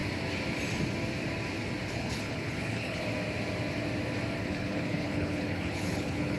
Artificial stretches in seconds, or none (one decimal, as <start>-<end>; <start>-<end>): 1.9-3.1; 4.4-6.4